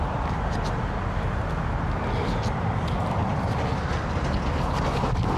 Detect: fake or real real